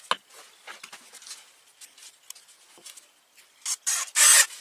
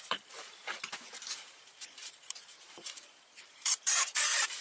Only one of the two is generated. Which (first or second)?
second